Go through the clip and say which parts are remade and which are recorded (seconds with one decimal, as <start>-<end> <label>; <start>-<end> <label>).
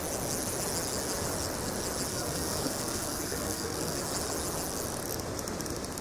0.0-2.1 recorded; 2.1-4.0 remade; 4.0-6.0 recorded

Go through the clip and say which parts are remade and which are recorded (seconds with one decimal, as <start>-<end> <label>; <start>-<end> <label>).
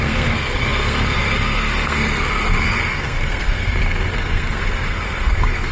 0.0-5.7 remade